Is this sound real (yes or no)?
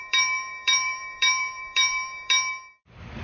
no